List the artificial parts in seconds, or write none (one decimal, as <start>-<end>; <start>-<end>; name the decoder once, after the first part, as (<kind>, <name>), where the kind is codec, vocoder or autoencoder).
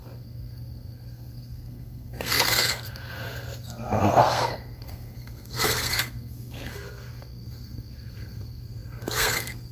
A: 0.0-9.7 (codec, SNAC)